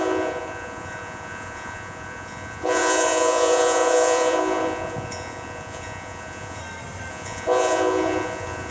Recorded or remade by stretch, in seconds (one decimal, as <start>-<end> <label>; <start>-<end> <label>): 0.0-6.6 remade; 6.6-7.1 recorded; 7.1-8.7 remade